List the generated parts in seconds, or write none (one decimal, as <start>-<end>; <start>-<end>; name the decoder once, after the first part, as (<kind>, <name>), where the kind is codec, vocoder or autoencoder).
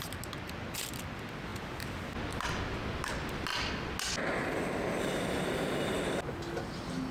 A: none